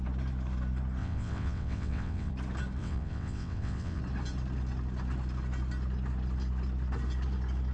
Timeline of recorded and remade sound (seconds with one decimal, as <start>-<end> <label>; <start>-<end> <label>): 0.0-1.0 recorded; 1.0-2.3 remade; 2.3-2.8 recorded; 2.8-4.0 remade; 4.0-7.7 recorded